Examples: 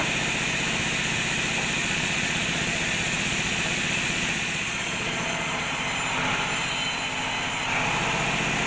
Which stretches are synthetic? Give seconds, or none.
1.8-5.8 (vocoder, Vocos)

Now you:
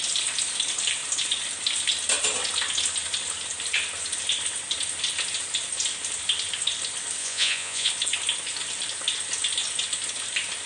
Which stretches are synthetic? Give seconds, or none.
7.2-7.9 (vocoder, Vocos)